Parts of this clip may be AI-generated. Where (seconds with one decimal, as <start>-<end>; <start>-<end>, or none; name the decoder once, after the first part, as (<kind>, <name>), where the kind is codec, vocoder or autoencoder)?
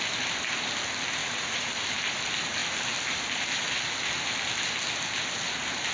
1.2-1.7 (vocoder, Vocos)